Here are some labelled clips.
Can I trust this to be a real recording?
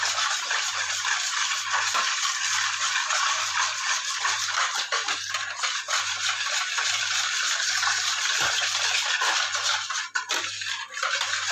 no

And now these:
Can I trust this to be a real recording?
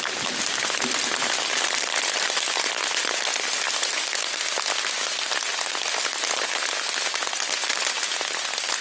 yes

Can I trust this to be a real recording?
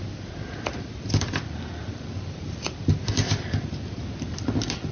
yes